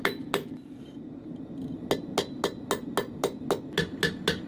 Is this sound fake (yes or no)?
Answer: no